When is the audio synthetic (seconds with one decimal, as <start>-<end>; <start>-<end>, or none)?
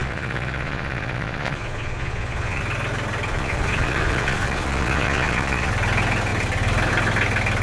0.0-2.6; 3.3-5.7